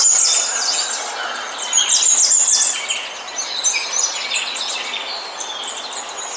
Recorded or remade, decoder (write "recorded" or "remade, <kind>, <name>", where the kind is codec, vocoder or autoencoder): recorded